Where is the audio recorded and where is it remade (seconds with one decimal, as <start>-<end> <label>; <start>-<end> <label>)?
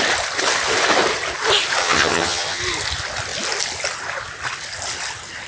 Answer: 0.0-1.8 recorded; 1.8-2.6 remade; 2.6-5.5 recorded